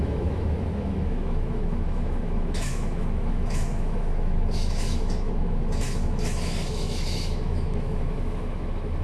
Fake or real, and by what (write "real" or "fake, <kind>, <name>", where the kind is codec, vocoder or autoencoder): fake, autoencoder, DAC-VAE